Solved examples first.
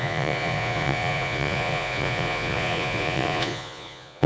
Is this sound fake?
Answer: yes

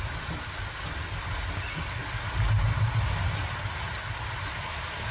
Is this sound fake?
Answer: no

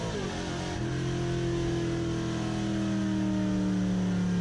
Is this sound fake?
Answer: no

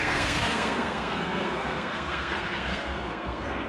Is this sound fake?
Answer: yes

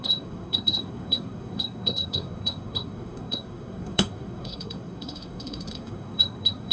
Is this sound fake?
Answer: yes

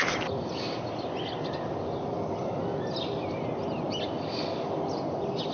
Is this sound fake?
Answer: no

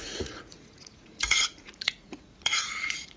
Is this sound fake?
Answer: yes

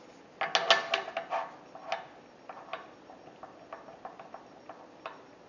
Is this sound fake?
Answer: no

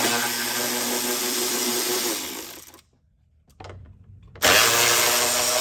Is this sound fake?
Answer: no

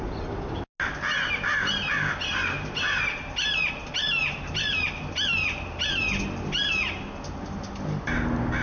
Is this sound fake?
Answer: no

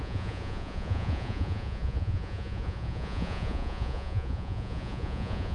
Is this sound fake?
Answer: yes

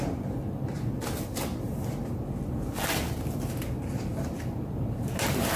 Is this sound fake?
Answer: no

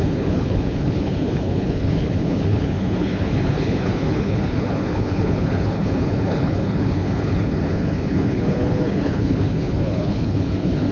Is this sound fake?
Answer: yes